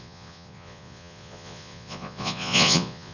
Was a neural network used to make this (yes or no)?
yes